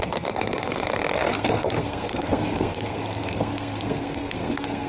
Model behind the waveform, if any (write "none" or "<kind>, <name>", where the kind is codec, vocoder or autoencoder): codec, SNAC